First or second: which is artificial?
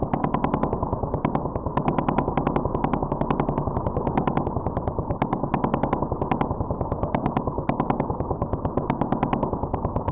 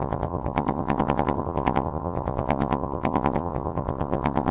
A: second